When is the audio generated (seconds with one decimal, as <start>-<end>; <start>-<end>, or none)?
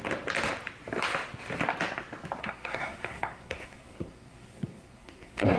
2.4-5.6